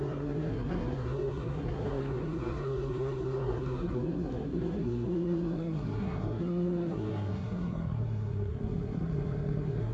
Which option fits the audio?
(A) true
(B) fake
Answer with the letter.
B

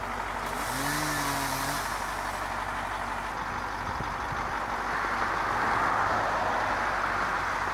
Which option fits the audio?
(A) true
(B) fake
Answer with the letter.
A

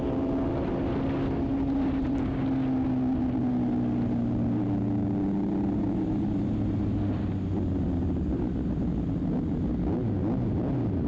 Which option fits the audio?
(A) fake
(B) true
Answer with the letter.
B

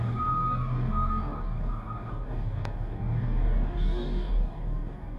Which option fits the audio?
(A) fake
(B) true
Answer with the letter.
A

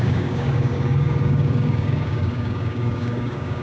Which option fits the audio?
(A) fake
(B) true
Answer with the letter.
A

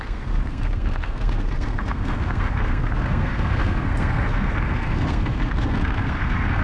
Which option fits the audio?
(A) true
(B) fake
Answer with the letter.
B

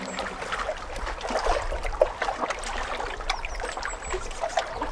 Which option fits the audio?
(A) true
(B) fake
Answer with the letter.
A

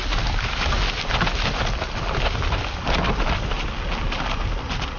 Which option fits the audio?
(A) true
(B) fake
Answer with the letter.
A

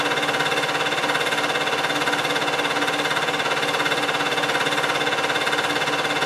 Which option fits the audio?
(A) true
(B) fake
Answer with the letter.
A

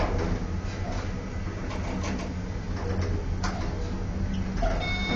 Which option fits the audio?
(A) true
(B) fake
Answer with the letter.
A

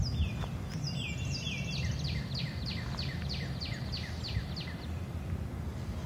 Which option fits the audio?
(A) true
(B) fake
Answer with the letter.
A